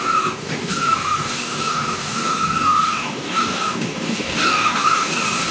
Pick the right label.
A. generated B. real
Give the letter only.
A